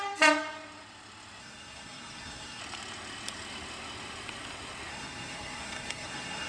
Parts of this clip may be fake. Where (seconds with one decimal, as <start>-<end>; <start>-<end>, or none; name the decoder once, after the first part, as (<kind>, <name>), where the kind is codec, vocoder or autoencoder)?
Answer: 1.4-2.6 (codec, SNAC); 4.9-6.5